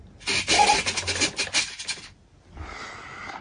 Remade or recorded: recorded